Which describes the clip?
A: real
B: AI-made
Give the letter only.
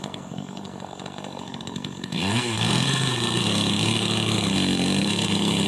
B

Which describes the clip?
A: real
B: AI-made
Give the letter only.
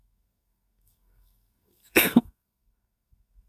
B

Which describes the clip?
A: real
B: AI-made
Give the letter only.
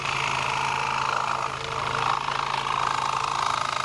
A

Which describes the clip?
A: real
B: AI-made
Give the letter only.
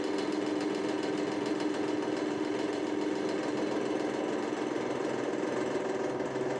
A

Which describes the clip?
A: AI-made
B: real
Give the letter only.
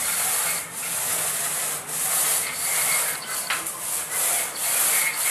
B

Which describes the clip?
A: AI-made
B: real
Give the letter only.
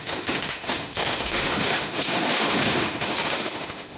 A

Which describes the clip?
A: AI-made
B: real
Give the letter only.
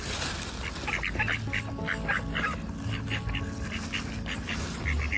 B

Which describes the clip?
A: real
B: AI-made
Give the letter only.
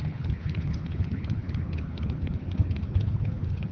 B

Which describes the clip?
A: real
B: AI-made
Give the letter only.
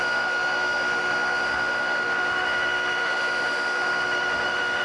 B